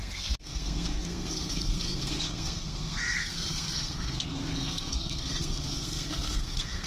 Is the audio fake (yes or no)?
yes